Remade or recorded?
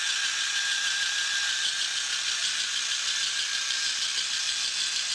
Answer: recorded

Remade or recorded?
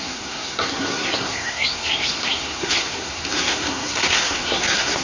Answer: remade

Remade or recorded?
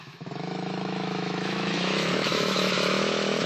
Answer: remade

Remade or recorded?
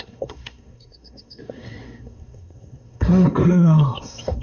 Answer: remade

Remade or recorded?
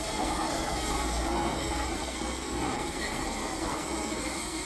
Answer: remade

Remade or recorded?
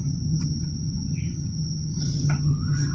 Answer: remade